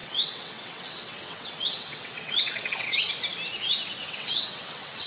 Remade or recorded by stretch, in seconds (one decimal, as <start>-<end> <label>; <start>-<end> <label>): 0.0-3.1 remade; 3.1-4.0 recorded; 4.0-5.1 remade